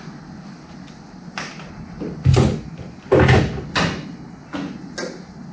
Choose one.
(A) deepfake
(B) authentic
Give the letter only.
B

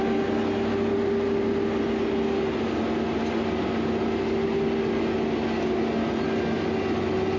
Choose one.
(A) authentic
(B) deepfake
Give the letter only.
A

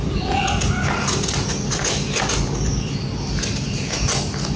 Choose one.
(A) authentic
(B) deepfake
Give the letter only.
A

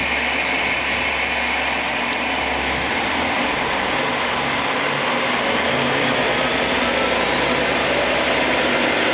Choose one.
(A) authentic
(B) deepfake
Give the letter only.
A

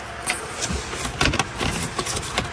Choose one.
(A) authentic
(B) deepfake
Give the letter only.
A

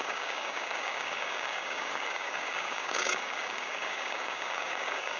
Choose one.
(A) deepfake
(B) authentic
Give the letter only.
A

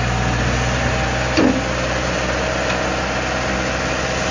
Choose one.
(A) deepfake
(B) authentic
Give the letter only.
B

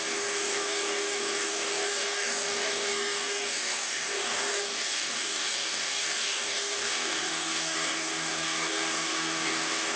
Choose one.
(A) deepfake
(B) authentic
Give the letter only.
A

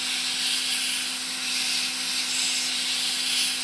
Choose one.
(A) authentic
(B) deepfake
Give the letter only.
A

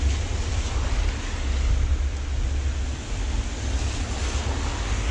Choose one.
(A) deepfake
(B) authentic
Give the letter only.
B